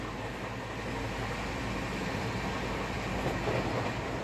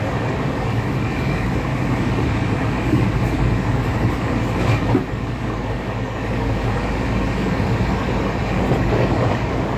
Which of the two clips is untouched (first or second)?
first